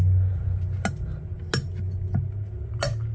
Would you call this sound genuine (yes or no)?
yes